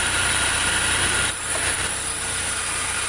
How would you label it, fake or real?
fake